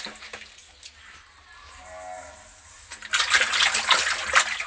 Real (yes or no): yes